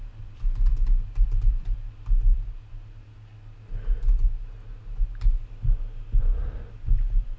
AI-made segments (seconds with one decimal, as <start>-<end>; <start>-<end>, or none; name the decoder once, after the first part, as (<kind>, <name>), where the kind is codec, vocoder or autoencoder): none

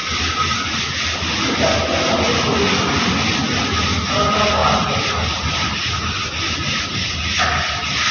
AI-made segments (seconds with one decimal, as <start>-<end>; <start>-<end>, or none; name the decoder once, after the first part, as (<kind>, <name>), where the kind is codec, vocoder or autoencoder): none

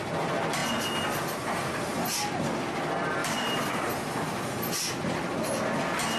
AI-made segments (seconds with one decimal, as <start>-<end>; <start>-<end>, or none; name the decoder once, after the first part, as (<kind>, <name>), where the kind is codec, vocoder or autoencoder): 3.2-3.9 (vocoder, BigVGAN v2)

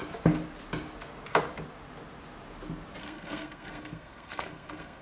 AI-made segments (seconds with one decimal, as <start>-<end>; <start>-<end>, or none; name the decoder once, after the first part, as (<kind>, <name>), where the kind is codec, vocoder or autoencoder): 3.0-5.0 (codec, SNAC)